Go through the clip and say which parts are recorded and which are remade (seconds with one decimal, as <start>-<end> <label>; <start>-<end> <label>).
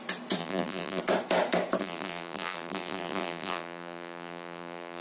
0.0-0.4 recorded; 0.4-1.0 remade; 1.0-1.8 recorded; 1.8-5.0 remade